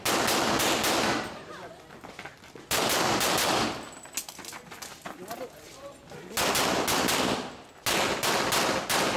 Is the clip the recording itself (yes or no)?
yes